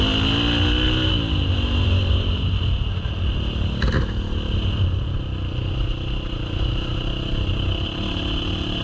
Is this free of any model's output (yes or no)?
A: yes